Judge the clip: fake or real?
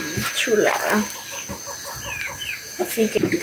real